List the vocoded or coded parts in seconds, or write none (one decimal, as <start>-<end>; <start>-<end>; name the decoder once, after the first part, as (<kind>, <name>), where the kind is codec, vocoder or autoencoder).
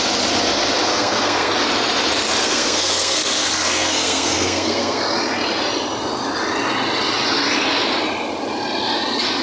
0.9-1.5 (codec, SNAC); 2.4-5.0